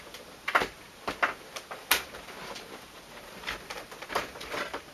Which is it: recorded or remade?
recorded